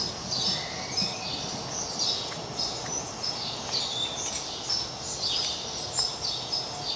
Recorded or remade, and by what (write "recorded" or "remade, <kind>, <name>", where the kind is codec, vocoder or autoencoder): recorded